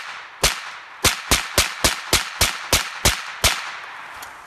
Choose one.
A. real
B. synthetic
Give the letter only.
A